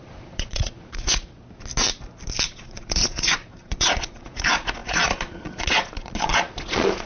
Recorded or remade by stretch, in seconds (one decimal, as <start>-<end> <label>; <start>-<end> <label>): 0.0-1.4 remade; 1.4-2.5 recorded; 2.5-7.1 remade